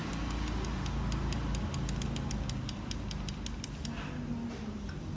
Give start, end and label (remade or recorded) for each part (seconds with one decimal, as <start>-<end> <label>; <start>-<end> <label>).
0.0-5.2 recorded